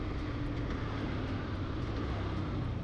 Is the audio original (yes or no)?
yes